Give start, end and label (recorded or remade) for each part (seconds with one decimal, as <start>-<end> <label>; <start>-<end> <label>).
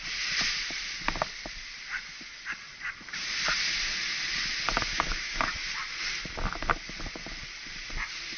0.0-4.9 recorded; 4.9-5.5 remade; 5.5-8.4 recorded